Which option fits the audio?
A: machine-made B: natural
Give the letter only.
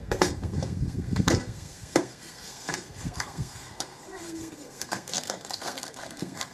A